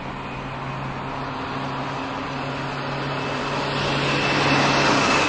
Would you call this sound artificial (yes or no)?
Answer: no